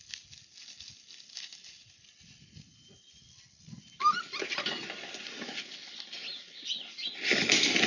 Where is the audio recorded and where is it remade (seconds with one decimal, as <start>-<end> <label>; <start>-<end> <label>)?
0.0-7.9 recorded

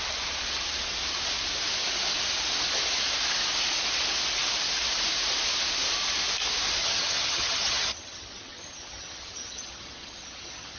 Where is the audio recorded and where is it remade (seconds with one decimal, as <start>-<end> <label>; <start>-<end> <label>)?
0.0-6.8 recorded; 6.8-10.8 remade

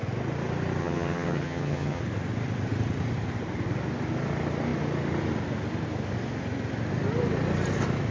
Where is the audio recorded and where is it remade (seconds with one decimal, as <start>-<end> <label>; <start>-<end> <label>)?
0.0-0.8 recorded; 0.8-2.0 remade; 2.0-8.1 recorded

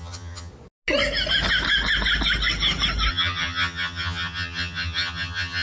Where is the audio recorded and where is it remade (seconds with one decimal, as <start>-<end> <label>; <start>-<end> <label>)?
0.0-0.5 remade; 0.5-3.1 recorded; 3.1-5.6 remade

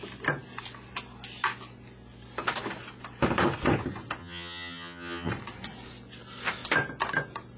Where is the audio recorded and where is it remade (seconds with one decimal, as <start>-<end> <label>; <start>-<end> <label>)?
0.0-4.2 recorded; 4.2-5.3 remade; 5.3-7.6 recorded